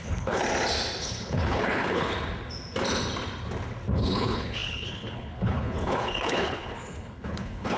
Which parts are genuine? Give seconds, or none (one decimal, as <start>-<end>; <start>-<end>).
0.4-1.0; 2.1-4.0